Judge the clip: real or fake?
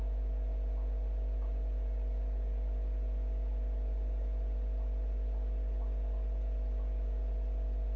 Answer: real